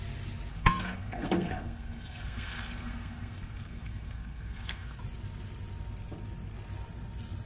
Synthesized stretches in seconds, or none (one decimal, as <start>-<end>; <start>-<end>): 0.5-5.0